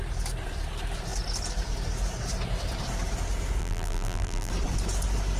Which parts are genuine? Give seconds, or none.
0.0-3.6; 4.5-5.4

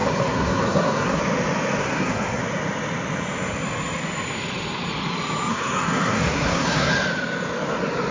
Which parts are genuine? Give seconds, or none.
1.2-1.8; 2.4-5.5; 6.9-8.1

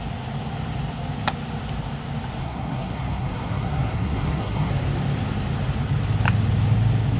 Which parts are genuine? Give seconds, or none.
0.0-2.4; 4.7-7.2

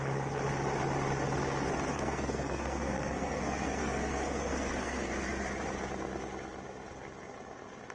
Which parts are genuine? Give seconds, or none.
0.0-1.9; 5.1-7.9

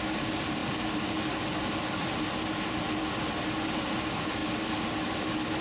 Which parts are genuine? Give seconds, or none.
0.0-5.6

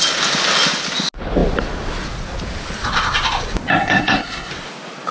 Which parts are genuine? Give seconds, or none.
0.0-3.8; 4.5-5.1

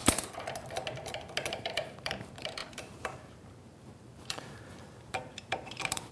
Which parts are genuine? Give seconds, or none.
0.0-1.5